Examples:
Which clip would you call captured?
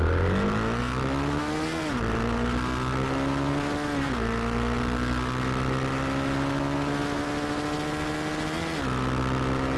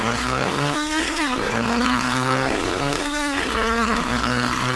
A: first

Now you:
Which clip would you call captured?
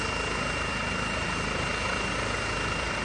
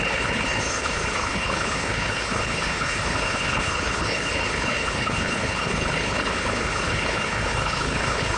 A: first